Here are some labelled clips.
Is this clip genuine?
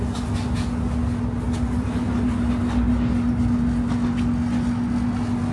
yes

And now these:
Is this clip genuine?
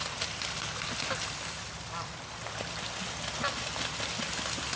yes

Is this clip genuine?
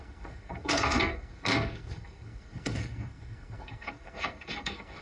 no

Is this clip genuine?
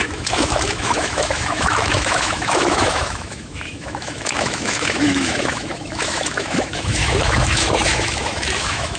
no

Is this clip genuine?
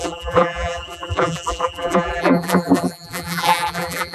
no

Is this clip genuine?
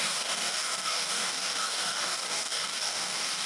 no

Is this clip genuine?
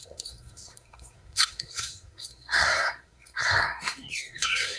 no